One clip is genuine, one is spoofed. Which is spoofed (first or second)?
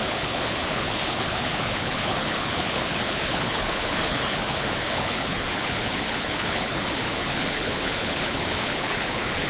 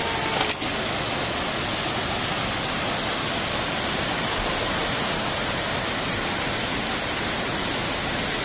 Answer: first